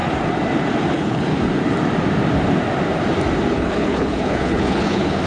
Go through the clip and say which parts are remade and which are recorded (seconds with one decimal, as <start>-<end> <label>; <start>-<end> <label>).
0.0-0.9 recorded; 0.9-1.3 remade; 1.3-3.5 recorded; 3.5-5.3 remade

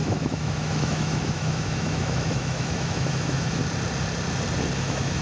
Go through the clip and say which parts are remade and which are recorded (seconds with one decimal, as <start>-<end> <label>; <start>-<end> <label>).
0.0-3.6 remade; 3.6-4.8 recorded; 4.8-5.2 remade